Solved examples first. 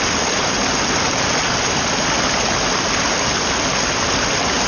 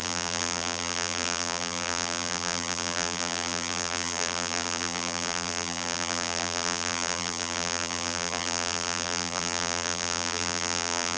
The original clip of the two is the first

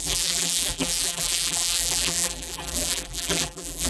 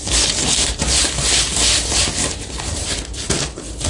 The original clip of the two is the second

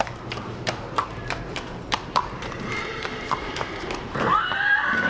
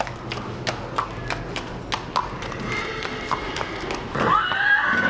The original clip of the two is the second